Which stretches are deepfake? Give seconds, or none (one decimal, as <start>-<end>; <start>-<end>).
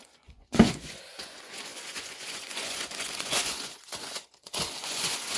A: 0.0-5.4